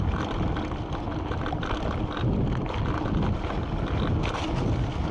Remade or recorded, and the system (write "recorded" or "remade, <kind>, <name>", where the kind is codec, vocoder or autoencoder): recorded